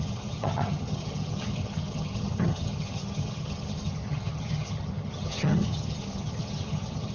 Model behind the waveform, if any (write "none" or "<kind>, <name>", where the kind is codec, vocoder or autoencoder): vocoder, HiFi-GAN